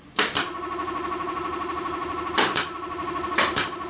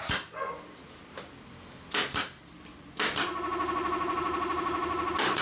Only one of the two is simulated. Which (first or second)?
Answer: first